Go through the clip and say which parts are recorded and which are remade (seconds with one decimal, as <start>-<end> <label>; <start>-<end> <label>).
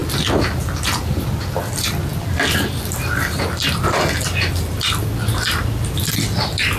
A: 0.0-2.1 recorded; 2.1-6.1 remade; 6.1-6.8 recorded